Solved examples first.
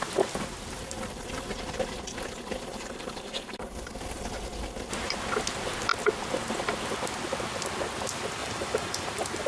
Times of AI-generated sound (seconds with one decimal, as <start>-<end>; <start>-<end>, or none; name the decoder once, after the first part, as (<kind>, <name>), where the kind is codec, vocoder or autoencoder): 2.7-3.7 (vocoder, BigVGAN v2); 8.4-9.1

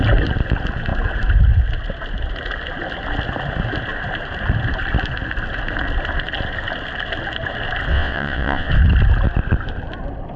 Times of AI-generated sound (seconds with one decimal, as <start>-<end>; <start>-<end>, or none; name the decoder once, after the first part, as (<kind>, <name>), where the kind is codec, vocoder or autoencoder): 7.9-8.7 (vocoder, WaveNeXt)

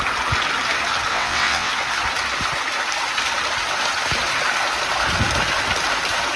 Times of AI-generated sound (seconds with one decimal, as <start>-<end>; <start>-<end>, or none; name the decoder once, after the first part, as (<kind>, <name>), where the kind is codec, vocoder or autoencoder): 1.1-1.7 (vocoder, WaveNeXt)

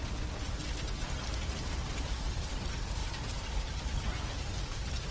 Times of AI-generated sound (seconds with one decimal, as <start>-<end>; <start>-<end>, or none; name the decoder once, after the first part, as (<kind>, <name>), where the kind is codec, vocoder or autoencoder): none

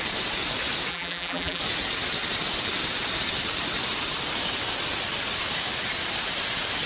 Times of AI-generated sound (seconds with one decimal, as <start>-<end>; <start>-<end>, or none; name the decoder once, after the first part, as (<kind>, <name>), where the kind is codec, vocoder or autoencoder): 0.9-1.6 (vocoder, BigVGAN v2)

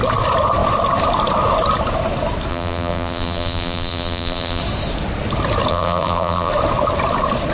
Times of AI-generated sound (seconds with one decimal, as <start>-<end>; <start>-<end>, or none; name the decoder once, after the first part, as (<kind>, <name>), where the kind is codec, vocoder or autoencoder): 2.5-4.6 (vocoder, BigVGAN v2); 5.7-6.5

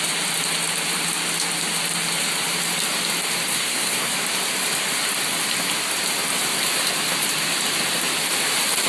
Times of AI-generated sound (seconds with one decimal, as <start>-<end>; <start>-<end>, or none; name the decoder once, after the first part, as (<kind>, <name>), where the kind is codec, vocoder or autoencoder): 3.5-4.1 (codec, SNAC)